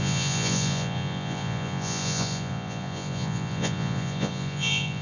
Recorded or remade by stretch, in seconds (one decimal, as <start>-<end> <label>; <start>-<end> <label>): 0.0-5.0 remade